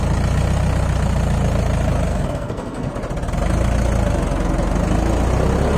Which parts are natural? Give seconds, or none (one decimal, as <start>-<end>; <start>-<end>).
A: 0.0-2.1; 2.9-5.8